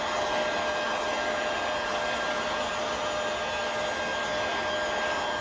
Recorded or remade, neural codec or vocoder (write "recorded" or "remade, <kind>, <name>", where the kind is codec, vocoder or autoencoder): recorded